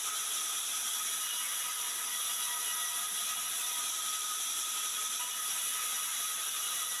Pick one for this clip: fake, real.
real